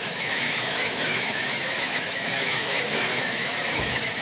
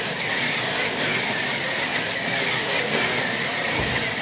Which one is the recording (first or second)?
second